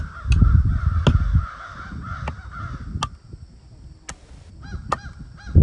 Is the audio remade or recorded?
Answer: recorded